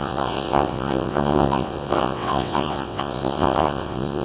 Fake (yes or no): yes